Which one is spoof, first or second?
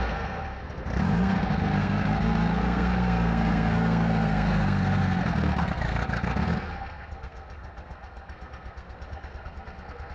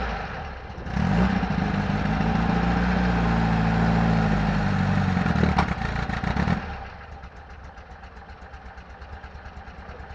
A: first